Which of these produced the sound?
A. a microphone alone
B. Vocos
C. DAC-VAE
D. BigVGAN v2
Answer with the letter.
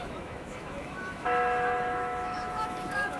C